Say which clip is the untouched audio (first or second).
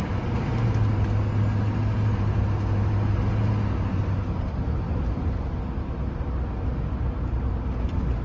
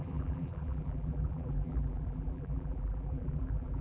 first